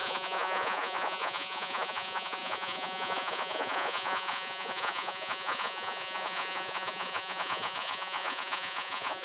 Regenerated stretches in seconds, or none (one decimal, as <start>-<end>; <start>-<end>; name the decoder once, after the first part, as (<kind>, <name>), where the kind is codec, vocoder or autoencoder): 0.0-9.2 (vocoder, Vocos)